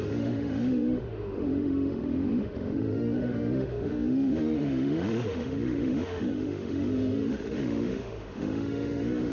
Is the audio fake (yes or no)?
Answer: yes